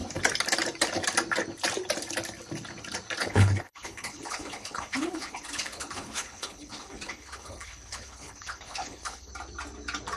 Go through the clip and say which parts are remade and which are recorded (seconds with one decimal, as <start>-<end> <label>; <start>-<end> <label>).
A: 0.0-3.2 recorded; 3.2-9.3 remade; 9.3-10.2 recorded